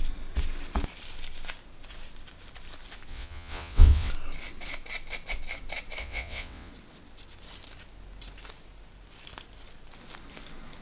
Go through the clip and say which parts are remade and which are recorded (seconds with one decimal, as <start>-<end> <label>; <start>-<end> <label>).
0.0-3.1 recorded; 3.1-4.1 remade; 4.1-6.0 recorded; 6.0-6.7 remade; 6.7-10.8 recorded